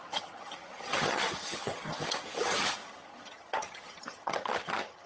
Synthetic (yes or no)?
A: yes